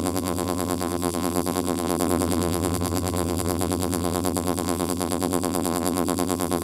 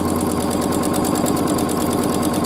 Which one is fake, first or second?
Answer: first